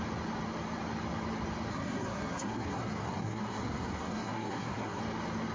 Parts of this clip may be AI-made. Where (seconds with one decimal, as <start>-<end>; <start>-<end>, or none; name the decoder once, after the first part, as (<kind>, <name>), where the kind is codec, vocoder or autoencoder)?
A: 1.7-5.0 (codec, SNAC)